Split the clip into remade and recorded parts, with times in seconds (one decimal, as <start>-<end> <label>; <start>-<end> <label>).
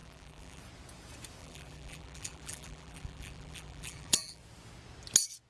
0.0-0.6 remade; 0.6-1.4 recorded; 1.4-4.4 remade; 4.4-5.5 recorded